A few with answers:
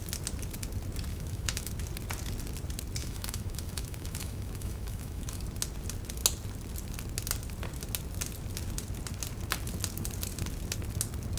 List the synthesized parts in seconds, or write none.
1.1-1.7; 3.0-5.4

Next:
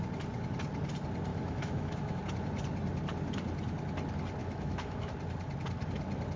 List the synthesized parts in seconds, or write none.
1.3-2.2; 4.4-5.1

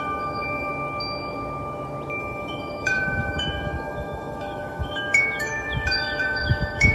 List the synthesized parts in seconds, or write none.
0.0-0.7; 2.2-6.9

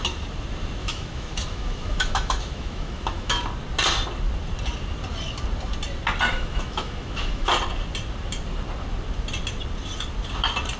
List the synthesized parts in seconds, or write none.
0.8-3.4; 6.3-7.5

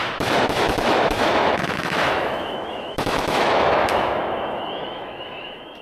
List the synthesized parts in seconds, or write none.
0.0-5.8

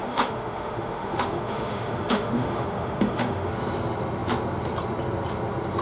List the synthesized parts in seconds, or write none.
0.0-3.5

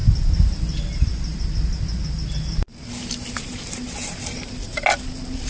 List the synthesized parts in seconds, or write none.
none